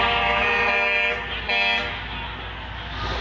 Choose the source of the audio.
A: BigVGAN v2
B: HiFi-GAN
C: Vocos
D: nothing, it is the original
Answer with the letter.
D